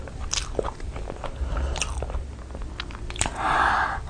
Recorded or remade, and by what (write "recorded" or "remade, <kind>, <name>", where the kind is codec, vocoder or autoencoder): recorded